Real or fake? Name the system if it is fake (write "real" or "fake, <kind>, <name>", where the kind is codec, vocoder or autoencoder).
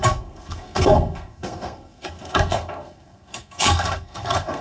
fake, codec, SNAC